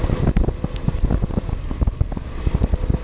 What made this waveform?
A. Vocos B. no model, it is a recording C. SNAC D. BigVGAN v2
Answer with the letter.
B